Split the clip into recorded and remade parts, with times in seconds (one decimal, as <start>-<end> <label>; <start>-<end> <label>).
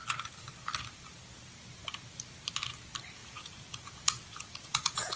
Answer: 0.0-3.2 recorded; 3.2-5.2 remade